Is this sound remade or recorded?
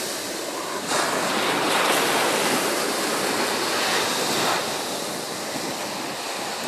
recorded